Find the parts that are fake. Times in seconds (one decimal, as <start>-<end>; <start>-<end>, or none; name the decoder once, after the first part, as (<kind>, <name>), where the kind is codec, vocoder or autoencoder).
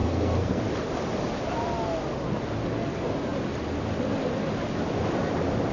0.0-0.6 (codec, SNAC)